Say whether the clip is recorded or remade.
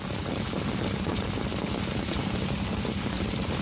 recorded